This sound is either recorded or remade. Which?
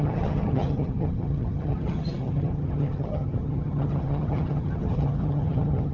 remade